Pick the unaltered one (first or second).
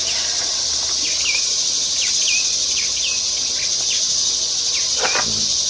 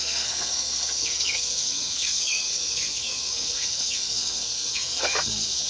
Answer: first